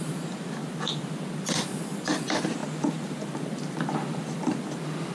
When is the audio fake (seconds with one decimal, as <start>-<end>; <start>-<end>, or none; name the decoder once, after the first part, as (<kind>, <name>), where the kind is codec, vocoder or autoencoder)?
0.0-5.1 (vocoder, BigVGAN v2)